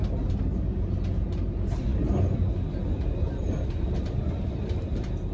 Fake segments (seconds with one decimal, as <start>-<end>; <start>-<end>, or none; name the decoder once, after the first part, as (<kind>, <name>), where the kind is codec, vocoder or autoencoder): none